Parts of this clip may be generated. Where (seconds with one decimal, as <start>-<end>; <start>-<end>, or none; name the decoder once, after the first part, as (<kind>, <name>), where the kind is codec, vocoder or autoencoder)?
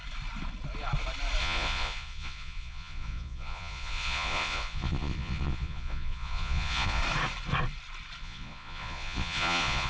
1.4-7.0 (vocoder, Vocos); 8.2-9.9